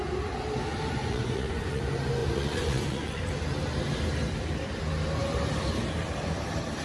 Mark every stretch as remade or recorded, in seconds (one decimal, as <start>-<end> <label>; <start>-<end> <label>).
0.0-1.0 recorded; 1.0-1.8 remade; 1.8-2.2 recorded; 2.2-3.2 remade; 3.2-6.8 recorded